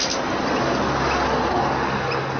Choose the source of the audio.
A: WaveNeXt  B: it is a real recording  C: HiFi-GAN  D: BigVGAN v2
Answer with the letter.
B